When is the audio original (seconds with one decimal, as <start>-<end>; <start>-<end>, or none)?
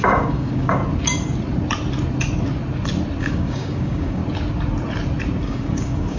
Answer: 0.8-3.2; 4.2-5.4